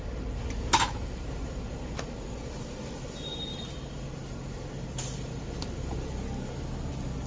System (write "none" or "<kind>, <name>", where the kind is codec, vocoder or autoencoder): none